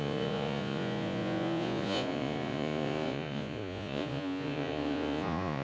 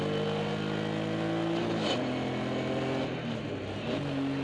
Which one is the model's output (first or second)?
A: first